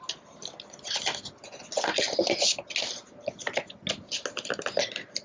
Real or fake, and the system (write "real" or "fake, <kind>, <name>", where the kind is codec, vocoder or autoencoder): real